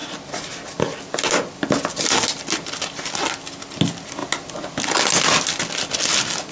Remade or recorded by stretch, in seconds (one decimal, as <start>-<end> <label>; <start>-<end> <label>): 0.0-6.5 recorded